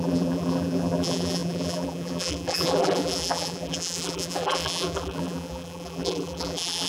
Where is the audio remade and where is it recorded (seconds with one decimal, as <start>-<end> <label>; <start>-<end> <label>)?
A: 0.0-6.9 remade